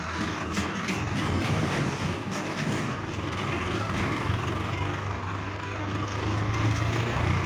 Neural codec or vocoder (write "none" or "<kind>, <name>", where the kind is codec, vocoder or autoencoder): codec, DAC